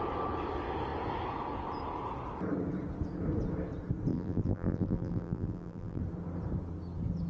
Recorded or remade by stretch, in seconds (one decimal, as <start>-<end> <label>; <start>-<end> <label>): 0.0-4.1 recorded; 4.1-6.0 remade; 6.0-7.3 recorded